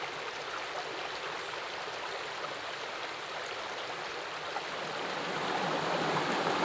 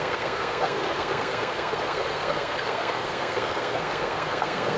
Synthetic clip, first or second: second